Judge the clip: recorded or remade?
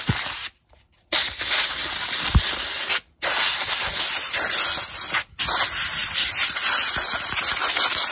recorded